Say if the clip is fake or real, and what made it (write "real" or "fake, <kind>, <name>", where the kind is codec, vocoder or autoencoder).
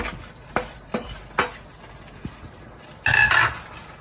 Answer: real